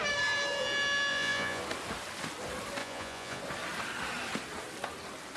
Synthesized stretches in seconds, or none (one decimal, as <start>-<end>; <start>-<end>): 1.1-1.6; 2.8-3.4